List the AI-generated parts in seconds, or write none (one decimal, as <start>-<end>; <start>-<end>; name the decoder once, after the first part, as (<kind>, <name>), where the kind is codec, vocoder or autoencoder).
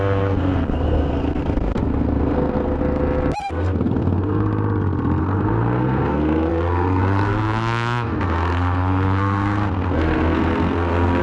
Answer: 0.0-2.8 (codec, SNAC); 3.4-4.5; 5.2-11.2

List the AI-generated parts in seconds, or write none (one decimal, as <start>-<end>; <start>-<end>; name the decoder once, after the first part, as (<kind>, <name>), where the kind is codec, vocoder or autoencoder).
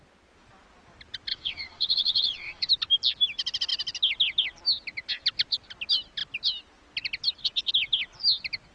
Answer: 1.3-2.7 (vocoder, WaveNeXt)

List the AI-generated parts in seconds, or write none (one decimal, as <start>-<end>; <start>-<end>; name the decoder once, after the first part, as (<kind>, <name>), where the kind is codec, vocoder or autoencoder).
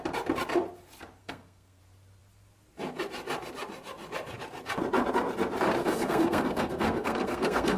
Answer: 1.2-1.8 (codec, SNAC); 5.8-7.8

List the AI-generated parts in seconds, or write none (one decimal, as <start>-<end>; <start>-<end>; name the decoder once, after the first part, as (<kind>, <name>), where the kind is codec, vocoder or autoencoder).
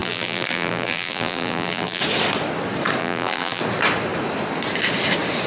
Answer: 0.0-2.0 (vocoder, BigVGAN v2); 3.0-3.6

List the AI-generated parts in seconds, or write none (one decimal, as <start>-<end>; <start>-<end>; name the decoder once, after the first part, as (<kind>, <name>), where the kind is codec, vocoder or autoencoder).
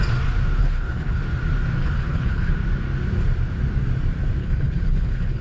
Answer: 0.6-1.2 (codec, HILCodec); 1.8-2.5; 4.4-5.4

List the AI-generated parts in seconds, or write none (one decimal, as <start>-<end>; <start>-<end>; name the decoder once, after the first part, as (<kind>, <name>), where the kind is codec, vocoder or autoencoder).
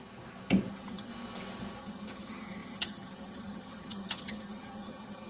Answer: 0.7-1.1 (vocoder, HiFi-GAN); 1.8-5.3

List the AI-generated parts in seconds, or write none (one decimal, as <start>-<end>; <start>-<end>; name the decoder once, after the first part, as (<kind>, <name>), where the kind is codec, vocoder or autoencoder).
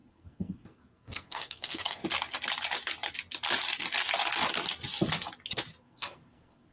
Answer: 0.0-2.0 (codec, SNAC); 5.8-6.7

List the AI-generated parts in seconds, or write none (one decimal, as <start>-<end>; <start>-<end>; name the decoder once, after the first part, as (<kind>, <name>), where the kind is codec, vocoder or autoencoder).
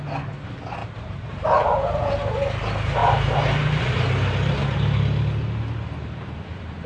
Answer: 0.8-2.0 (vocoder, BigVGAN v2); 3.0-3.8